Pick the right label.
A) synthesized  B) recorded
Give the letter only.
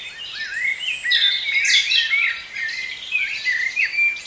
B